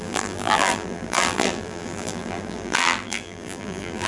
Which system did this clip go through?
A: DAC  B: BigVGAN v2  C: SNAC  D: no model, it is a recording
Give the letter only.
B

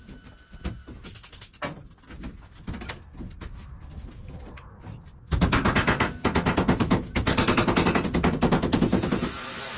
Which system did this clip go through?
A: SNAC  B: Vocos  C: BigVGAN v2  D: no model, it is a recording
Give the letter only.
D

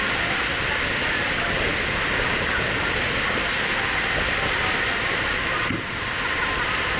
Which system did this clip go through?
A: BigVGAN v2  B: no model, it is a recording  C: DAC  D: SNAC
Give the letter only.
B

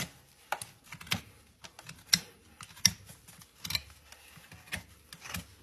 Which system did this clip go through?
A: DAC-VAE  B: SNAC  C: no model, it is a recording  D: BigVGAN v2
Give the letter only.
C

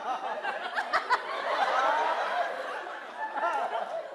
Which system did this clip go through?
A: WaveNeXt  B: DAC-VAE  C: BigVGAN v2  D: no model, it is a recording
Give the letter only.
D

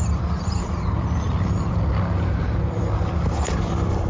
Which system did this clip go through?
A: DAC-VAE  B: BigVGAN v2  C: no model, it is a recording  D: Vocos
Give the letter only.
B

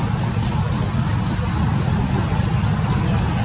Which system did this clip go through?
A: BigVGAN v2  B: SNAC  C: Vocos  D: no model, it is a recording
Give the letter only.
D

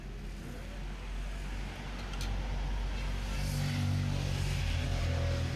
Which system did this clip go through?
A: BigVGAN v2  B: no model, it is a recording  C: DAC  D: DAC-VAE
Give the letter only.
B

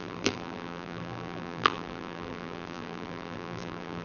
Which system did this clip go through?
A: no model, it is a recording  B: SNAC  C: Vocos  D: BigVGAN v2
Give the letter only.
D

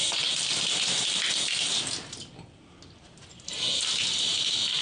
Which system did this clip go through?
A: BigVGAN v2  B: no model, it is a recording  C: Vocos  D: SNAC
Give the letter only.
B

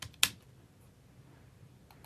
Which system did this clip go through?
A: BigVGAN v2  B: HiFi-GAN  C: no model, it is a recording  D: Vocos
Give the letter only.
C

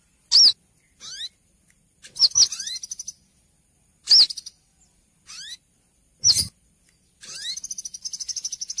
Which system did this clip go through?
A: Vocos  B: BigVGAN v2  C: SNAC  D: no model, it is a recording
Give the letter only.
D